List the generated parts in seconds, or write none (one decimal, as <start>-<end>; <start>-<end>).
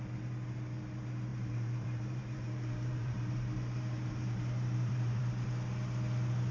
1.3-5.2